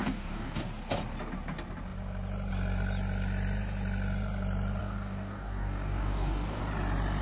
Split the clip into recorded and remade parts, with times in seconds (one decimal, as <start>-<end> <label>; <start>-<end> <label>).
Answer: 0.0-0.6 remade; 0.6-4.8 recorded; 4.8-6.6 remade; 6.6-7.2 recorded